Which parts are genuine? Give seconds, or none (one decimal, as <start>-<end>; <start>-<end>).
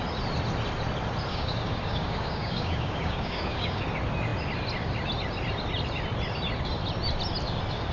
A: 0.0-1.3; 3.8-7.9